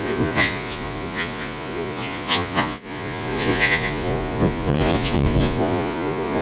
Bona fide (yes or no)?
no